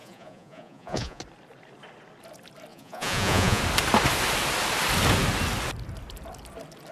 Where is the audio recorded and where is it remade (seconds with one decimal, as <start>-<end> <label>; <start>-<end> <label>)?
0.0-1.2 remade; 1.2-2.7 recorded; 2.7-3.6 remade; 3.6-6.9 recorded